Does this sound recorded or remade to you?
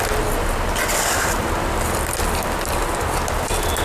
recorded